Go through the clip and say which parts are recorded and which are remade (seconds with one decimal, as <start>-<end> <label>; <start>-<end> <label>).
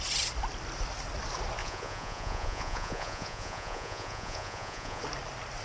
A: 0.0-1.6 recorded; 1.6-5.0 remade; 5.0-5.6 recorded